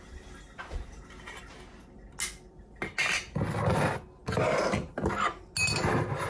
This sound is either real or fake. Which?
real